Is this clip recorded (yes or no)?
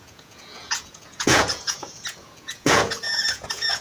no